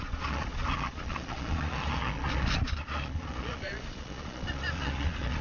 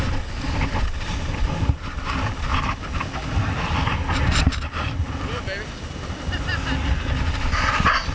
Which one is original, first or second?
second